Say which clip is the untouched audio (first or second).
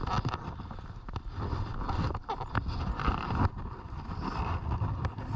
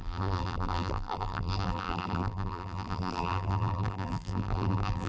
first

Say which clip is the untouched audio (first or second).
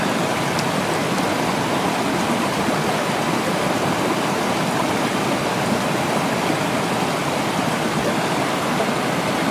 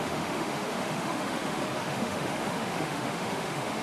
first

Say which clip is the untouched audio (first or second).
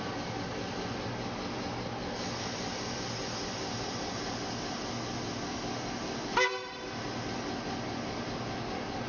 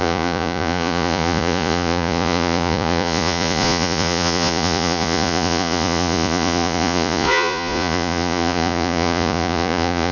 first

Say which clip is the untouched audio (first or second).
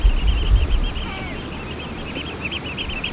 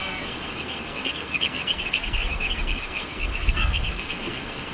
first